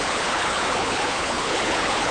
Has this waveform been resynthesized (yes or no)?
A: yes